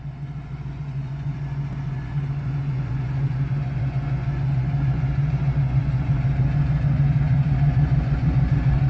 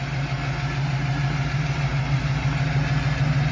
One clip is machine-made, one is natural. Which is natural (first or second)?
second